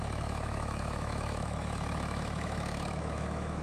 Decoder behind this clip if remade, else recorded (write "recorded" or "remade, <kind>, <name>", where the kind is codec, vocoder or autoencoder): remade, autoencoder, DAC-VAE